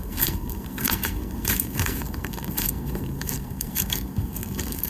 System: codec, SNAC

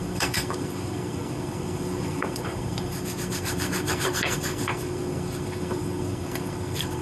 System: codec, SNAC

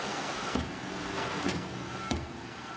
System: codec, SNAC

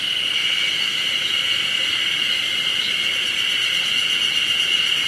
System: none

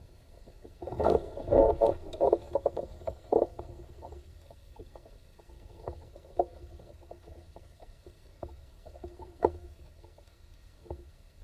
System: codec, SNAC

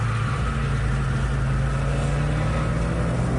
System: none